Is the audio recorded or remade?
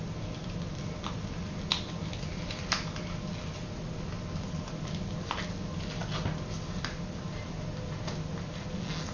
recorded